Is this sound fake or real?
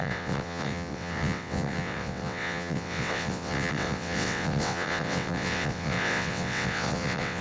fake